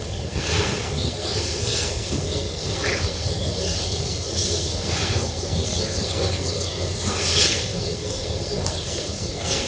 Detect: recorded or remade remade